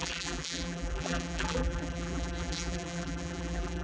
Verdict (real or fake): fake